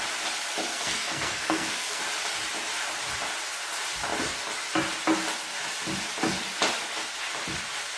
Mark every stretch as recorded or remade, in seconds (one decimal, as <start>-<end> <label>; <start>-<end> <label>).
0.0-0.7 recorded; 0.7-2.0 remade; 2.0-8.0 recorded